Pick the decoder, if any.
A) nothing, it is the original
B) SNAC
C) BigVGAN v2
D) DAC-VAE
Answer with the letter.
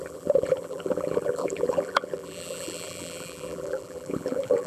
C